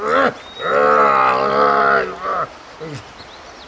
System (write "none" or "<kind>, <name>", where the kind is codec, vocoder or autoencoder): none